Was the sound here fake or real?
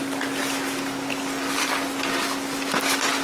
real